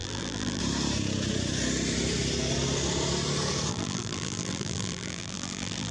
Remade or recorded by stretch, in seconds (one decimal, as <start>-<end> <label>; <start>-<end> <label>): 0.0-0.6 remade; 0.6-3.7 recorded; 3.7-5.9 remade